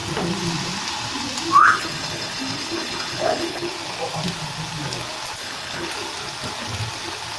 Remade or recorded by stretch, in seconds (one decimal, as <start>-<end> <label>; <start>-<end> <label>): 0.0-1.6 recorded; 1.6-3.7 remade; 3.7-5.4 recorded; 5.4-5.9 remade; 5.9-7.4 recorded